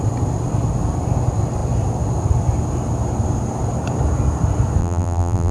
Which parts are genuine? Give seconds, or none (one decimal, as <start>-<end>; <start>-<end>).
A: 0.0-4.8